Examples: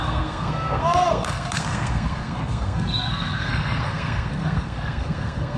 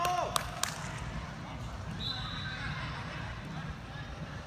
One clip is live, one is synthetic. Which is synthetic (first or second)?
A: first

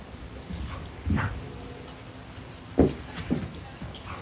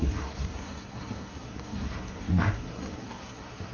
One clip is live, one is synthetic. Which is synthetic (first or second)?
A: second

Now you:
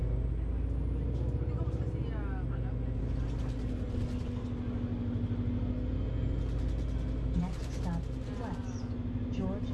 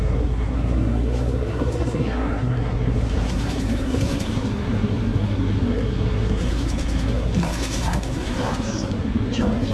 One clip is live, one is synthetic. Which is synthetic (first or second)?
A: second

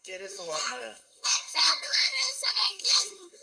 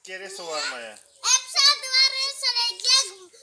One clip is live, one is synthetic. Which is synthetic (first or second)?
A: first